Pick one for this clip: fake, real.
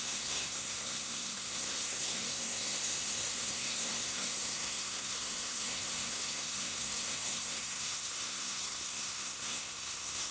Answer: fake